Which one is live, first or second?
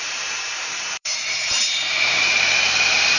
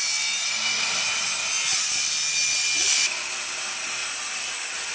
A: second